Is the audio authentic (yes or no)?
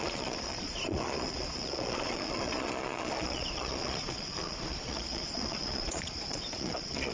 no